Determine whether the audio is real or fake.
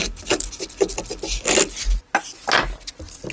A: real